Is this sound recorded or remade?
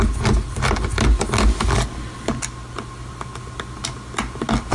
recorded